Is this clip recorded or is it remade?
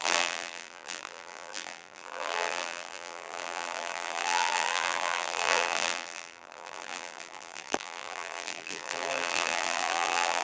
remade